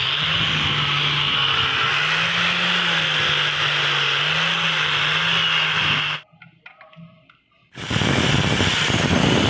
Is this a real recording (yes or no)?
yes